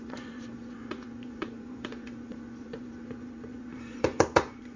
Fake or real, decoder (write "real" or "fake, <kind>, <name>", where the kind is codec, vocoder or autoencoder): fake, vocoder, Vocos